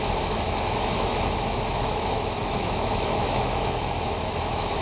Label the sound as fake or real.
fake